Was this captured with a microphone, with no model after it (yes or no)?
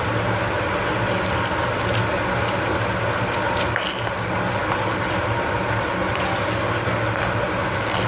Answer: yes